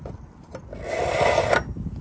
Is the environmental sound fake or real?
real